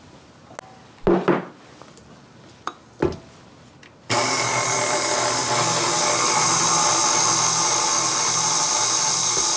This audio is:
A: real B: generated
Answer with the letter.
A